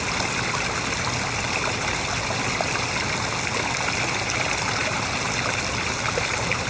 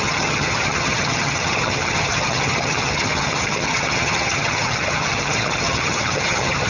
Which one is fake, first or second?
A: second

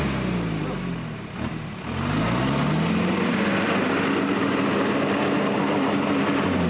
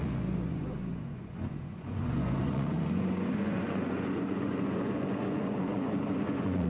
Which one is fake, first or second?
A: second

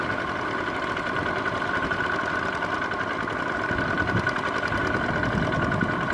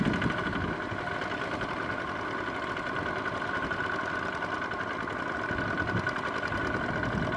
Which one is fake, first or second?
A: first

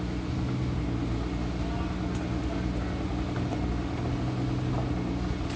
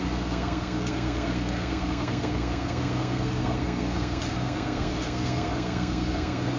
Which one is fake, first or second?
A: second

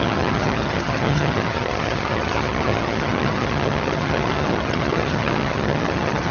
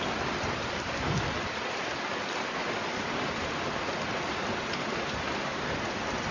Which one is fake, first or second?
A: first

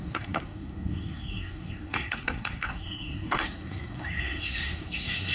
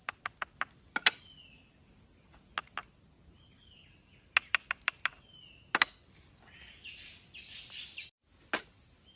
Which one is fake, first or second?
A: first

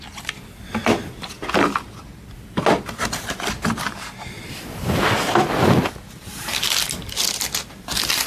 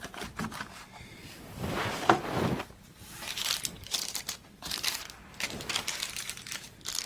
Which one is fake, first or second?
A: second